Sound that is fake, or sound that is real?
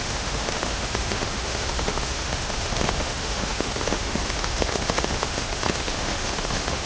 fake